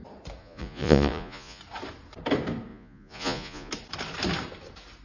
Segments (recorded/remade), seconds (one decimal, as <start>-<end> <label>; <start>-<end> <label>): 0.0-0.4 recorded; 0.4-1.6 remade; 1.6-2.7 recorded; 2.7-3.7 remade; 3.7-5.0 recorded